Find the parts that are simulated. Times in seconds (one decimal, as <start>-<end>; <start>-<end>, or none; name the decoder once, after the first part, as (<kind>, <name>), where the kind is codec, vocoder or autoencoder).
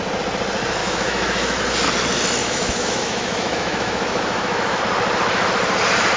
0.8-1.6 (autoencoder, DAC-VAE); 2.4-4.8